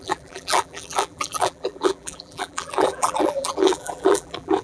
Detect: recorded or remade remade